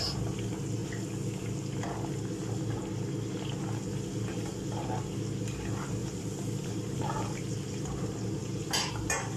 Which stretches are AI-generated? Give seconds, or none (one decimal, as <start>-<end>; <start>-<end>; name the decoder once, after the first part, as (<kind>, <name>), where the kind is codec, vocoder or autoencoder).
6.0-8.9 (vocoder, BigVGAN v2)

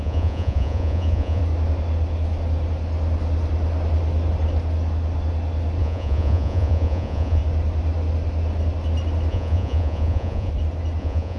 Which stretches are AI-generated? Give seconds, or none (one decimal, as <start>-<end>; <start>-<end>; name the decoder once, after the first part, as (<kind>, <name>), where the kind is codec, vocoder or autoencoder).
0.0-1.4 (vocoder, Vocos); 5.8-7.4; 9.3-10.5; 11.0-11.4

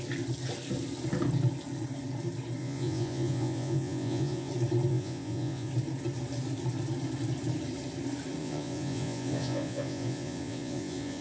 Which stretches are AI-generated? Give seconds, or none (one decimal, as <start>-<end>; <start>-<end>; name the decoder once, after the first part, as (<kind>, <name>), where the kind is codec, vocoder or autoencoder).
2.6-4.5 (vocoder, Vocos); 4.9-5.7; 8.4-11.2

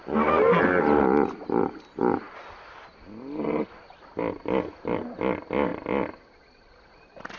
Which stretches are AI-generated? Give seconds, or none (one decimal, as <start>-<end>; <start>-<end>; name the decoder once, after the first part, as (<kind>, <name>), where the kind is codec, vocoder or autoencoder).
none

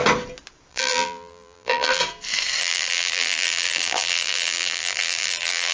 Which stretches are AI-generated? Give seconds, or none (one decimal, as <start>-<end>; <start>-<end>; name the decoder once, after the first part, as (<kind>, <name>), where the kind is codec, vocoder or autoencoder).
0.7-2.0 (vocoder, BigVGAN v2); 2.6-5.7

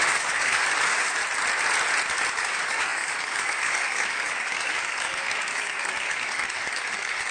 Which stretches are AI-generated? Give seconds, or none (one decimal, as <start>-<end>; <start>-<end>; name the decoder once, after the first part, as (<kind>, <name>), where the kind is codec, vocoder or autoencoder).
0.0-1.2 (codec, DAC); 2.3-7.3

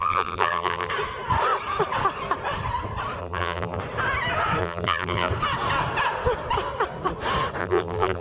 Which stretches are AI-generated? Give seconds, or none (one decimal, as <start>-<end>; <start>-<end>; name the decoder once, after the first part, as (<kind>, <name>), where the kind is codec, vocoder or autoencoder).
0.0-0.9 (vocoder, BigVGAN v2); 3.2-3.8; 4.6-5.3; 7.6-8.2